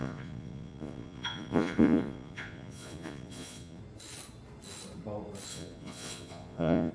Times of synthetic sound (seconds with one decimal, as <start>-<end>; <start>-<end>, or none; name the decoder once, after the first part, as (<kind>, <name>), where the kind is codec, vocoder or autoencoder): 0.0-3.8 (vocoder, Vocos); 5.5-6.9